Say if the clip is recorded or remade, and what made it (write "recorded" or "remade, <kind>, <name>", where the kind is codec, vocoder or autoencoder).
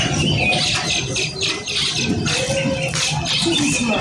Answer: recorded